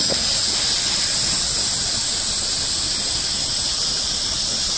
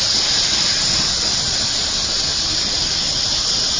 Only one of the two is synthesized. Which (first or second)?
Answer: second